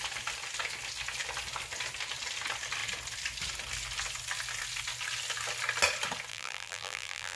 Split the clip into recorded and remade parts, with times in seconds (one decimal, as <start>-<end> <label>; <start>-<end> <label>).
0.0-6.3 recorded; 6.3-7.4 remade